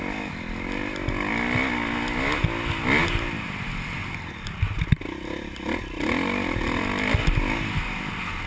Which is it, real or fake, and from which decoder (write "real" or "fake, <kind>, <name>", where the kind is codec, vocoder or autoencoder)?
real